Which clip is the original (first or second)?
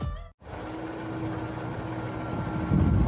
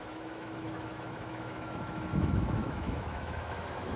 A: first